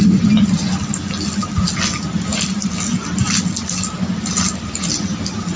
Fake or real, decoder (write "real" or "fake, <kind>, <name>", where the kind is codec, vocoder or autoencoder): real